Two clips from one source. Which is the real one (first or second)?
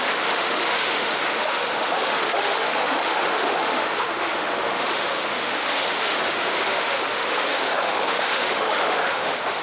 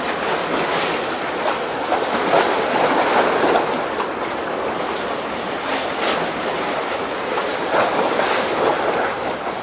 second